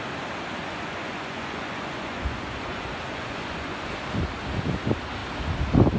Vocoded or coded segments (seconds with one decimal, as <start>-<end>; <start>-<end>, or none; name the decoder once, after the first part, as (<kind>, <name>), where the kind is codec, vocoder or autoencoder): 0.6-4.0 (vocoder, Vocos)